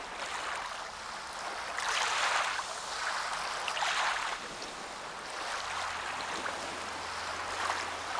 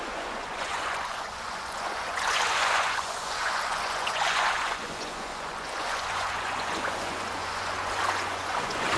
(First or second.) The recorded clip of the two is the first